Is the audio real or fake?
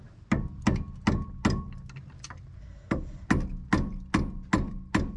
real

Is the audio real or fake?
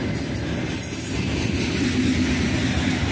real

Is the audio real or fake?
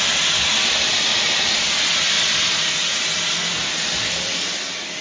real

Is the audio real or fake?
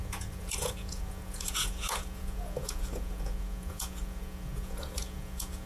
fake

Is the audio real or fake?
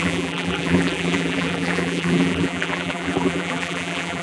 fake